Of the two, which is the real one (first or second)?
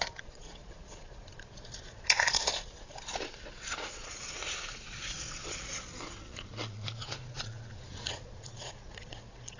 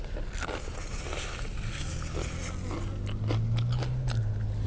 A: second